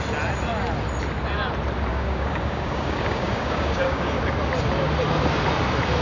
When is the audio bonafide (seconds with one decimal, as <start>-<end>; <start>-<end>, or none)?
0.0-1.9; 4.2-6.0